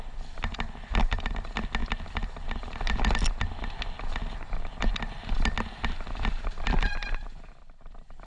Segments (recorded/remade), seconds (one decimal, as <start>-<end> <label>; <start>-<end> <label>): 0.0-8.3 recorded